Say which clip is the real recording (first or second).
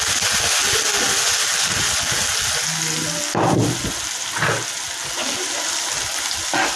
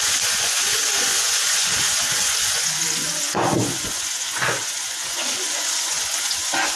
first